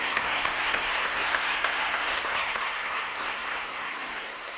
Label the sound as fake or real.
fake